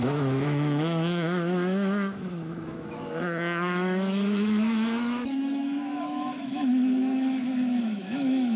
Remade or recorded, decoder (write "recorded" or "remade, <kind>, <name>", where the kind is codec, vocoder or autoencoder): remade, autoencoder, DAC-VAE